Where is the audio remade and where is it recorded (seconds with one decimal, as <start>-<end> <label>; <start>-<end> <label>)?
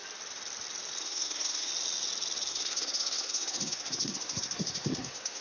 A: 0.0-1.0 recorded; 1.0-1.7 remade; 1.7-2.5 recorded; 2.5-5.4 remade